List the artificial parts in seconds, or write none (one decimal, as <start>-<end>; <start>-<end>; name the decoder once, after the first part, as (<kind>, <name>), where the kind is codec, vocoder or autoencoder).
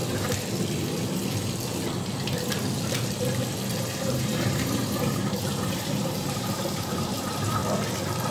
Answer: 3.8-7.6 (vocoder, BigVGAN v2)